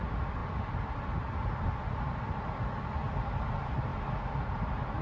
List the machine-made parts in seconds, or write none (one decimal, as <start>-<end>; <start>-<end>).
none